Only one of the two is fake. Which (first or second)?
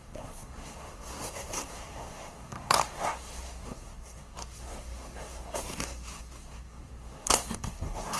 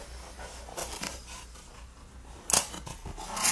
first